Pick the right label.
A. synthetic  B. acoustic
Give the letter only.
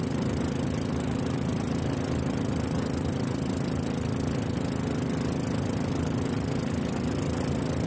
B